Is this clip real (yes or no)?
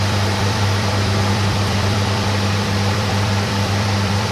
no